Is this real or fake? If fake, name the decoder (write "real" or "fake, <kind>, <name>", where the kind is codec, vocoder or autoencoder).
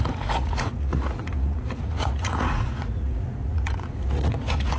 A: fake, vocoder, Vocos